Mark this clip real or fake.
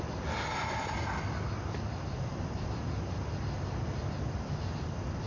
real